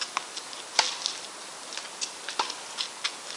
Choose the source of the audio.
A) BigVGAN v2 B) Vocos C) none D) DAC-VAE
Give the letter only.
C